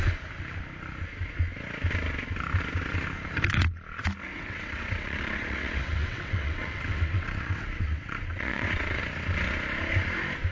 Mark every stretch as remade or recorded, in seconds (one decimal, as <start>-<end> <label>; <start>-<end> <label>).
0.0-4.3 recorded; 4.3-9.0 remade; 9.0-10.5 recorded